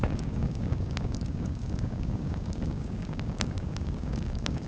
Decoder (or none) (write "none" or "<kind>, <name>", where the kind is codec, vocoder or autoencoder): codec, DAC